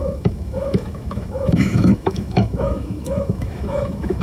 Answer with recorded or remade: remade